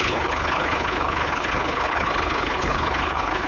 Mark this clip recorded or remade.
remade